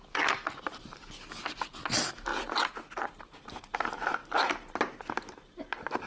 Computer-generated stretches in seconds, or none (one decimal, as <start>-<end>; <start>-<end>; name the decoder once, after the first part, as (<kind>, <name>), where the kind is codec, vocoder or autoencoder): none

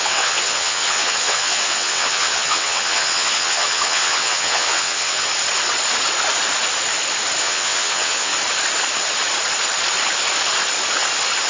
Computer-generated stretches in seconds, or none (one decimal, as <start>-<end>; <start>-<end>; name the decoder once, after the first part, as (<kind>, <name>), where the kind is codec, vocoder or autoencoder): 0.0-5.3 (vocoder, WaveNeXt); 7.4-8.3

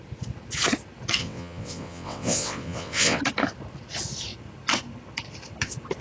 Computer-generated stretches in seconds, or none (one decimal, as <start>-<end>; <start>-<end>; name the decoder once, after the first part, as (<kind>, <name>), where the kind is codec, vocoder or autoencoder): 1.2-3.2 (vocoder, WaveNeXt)

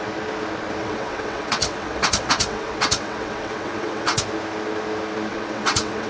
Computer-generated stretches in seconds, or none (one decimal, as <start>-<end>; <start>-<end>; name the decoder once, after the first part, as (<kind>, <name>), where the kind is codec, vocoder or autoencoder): 0.8-4.2 (vocoder, WaveNeXt); 5.3-6.1

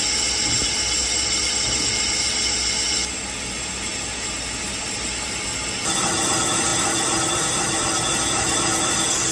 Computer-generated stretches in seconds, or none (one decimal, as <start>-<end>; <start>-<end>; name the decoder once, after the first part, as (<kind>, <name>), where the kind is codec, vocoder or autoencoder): none

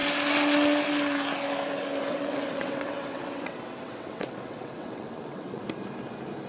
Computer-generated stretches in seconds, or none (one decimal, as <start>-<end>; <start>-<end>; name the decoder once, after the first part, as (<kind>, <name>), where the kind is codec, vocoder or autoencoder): 2.1-5.6 (vocoder, WaveNeXt)

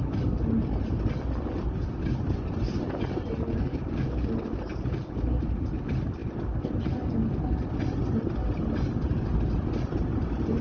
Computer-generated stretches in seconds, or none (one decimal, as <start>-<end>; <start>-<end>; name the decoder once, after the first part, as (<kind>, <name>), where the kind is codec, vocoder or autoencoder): none

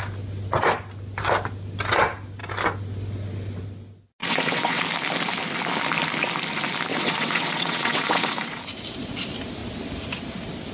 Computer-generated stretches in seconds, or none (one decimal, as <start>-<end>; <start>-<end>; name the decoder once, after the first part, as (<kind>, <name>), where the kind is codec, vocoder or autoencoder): 4.2-4.8 (vocoder, WaveNeXt); 6.9-8.6